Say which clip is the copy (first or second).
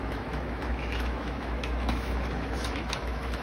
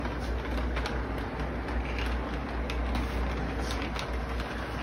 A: first